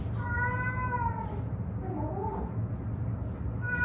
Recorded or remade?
recorded